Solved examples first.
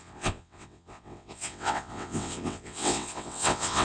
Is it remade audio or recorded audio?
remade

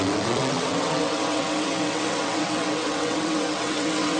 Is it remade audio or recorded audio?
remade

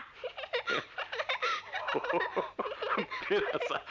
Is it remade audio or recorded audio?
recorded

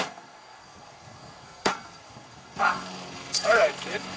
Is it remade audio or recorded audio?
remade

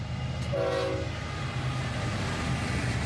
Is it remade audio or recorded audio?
recorded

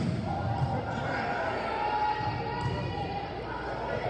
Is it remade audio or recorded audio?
recorded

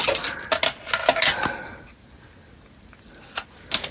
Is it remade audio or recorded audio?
recorded